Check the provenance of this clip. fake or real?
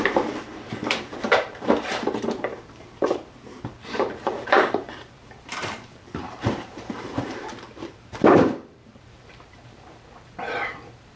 fake